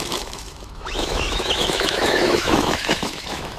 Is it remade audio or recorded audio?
remade